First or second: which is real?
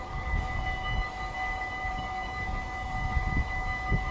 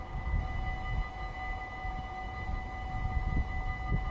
second